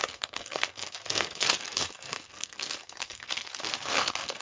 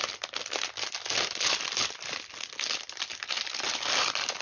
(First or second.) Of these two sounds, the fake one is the first